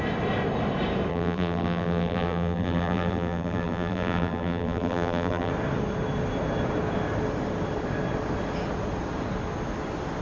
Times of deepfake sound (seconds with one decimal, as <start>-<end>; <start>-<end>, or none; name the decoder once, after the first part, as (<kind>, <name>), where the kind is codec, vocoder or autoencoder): 1.1-5.5 (vocoder, BigVGAN v2)